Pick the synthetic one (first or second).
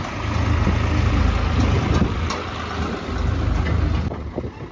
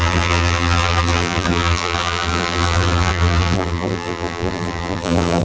second